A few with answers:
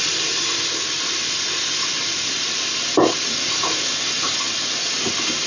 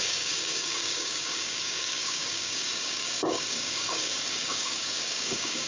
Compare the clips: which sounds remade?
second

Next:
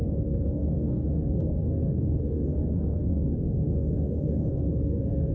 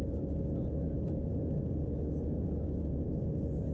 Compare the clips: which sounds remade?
first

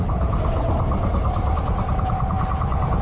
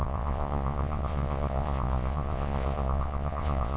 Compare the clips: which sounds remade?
second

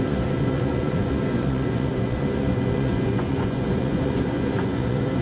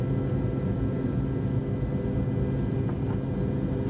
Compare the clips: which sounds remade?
first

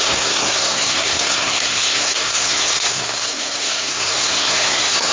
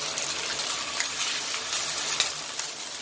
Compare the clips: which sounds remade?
first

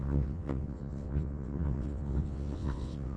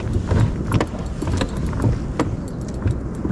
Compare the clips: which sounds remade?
first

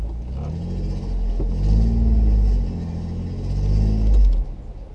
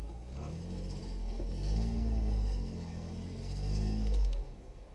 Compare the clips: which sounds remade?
second